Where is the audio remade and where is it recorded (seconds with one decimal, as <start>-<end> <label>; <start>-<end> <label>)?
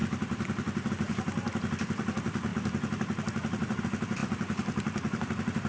0.0-5.7 recorded